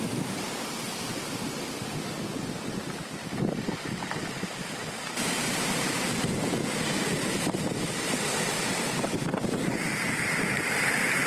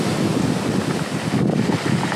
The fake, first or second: first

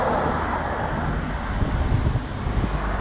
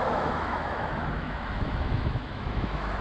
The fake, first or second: second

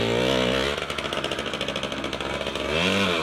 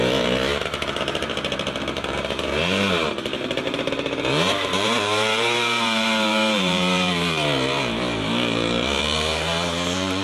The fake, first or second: second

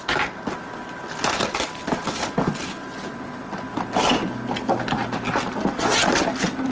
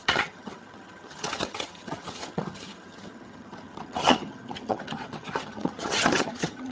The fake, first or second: second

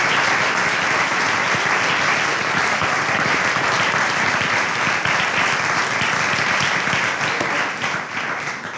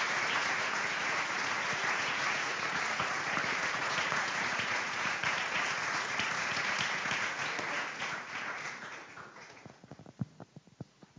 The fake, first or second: second